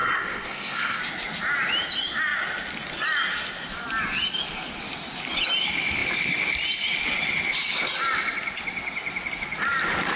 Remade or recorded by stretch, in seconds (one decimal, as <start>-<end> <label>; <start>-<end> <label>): 0.0-1.0 remade; 1.0-10.2 recorded